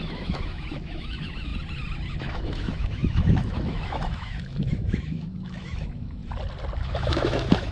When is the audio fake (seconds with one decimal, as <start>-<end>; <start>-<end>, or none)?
0.0-1.5; 2.1-6.2; 6.8-7.7